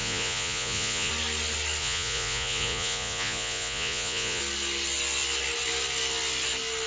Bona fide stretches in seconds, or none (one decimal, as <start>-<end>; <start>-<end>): 1.1-1.8; 4.4-6.9